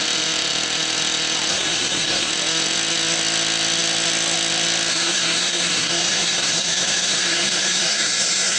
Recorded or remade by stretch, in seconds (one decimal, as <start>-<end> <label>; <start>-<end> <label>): 0.0-1.5 recorded; 1.5-2.3 remade; 2.3-4.9 recorded; 4.9-8.6 remade